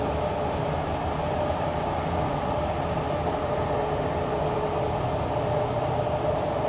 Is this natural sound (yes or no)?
yes